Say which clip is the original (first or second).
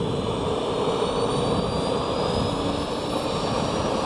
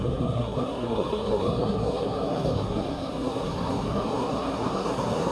first